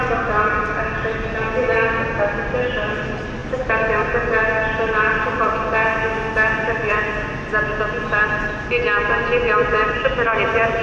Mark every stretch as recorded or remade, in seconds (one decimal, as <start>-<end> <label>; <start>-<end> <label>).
0.0-10.8 recorded